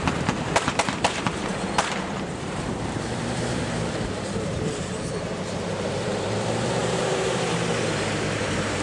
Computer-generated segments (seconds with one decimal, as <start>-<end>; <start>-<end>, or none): 0.0-8.8